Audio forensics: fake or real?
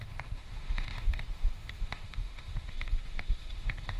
fake